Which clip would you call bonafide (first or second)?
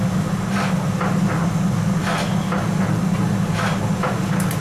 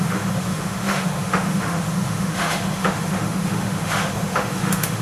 first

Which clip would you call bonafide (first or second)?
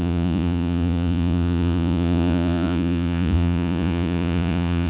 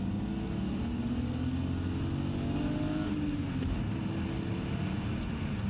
second